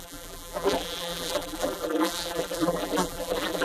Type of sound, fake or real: fake